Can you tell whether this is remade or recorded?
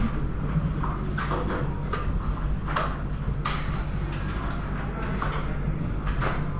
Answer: recorded